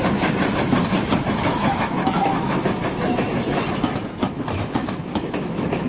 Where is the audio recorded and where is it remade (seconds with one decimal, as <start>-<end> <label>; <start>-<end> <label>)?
0.0-1.5 recorded; 1.5-3.6 remade; 3.6-4.8 recorded; 4.8-5.9 remade